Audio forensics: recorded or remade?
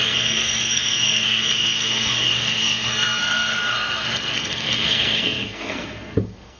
remade